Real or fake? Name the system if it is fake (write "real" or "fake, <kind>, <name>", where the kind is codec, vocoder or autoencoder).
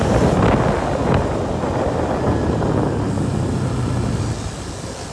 real